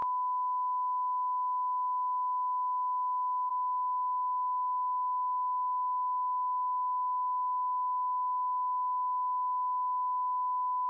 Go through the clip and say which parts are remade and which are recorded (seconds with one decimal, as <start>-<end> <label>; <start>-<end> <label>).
0.0-10.9 recorded